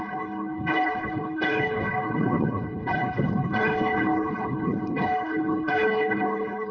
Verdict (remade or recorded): remade